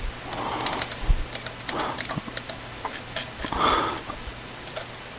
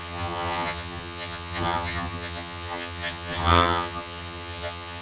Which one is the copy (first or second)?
second